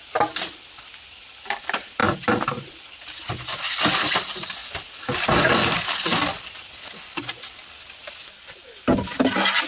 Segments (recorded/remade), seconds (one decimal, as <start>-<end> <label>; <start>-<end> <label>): 0.0-9.7 recorded